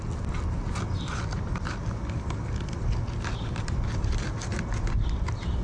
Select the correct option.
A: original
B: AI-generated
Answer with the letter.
A